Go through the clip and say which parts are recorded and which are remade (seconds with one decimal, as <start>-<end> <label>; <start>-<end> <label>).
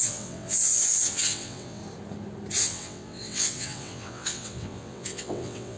0.0-1.8 remade; 1.8-2.6 recorded; 2.6-5.8 remade